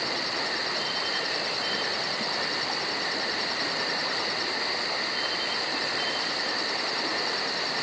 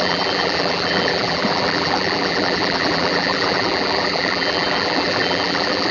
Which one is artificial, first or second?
second